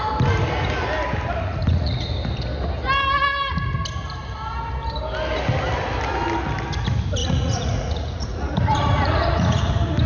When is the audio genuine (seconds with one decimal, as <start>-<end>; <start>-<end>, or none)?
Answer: 0.0-1.5; 2.1-7.2; 9.7-10.1